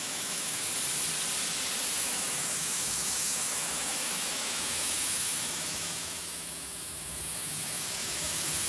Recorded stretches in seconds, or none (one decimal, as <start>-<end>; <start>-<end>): 0.7-1.9